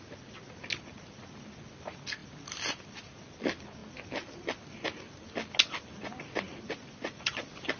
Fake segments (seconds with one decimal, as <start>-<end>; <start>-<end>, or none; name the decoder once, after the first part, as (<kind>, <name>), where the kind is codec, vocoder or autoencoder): none